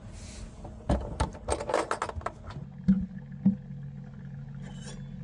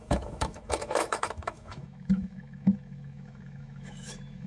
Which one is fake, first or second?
second